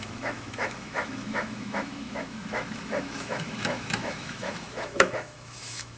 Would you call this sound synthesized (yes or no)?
yes